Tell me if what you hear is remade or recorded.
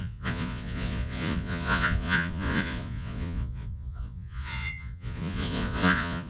remade